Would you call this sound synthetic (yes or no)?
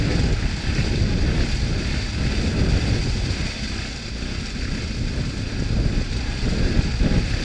no